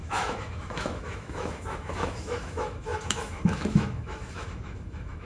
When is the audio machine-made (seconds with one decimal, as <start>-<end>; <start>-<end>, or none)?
0.0-5.2